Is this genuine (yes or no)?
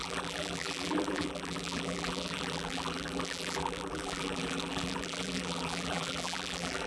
no